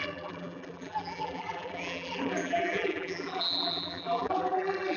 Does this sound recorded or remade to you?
remade